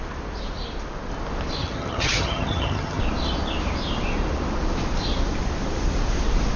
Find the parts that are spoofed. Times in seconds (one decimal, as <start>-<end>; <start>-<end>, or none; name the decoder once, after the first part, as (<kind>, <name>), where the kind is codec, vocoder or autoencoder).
1.6-3.0 (vocoder, HiFi-GAN)